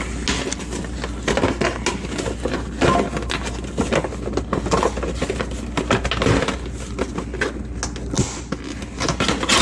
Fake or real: real